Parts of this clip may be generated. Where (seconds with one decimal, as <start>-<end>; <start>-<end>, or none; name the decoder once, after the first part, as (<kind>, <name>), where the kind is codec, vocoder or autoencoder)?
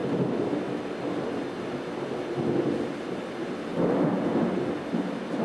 none